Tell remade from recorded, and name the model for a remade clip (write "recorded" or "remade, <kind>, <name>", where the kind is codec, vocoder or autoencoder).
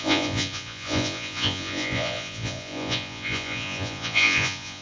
remade, vocoder, Vocos